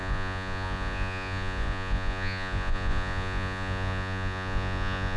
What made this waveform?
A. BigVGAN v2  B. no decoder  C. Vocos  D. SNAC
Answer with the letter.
C